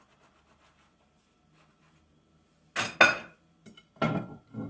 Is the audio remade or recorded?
recorded